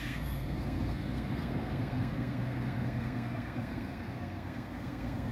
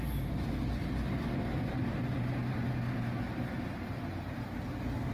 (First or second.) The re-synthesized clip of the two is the first